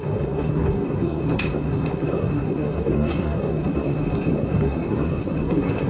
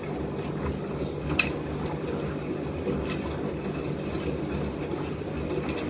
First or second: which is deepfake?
first